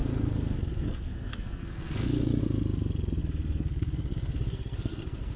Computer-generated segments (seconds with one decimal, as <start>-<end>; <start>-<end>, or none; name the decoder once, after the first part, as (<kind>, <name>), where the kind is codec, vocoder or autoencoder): 0.0-2.4 (codec, SNAC); 3.2-5.4